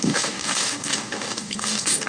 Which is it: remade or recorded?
remade